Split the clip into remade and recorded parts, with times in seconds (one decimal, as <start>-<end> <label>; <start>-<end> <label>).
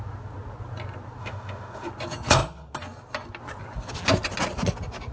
0.0-1.2 recorded; 1.2-1.9 remade; 1.9-5.1 recorded